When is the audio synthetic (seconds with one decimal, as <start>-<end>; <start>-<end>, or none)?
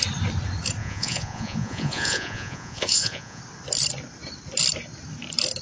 0.8-3.4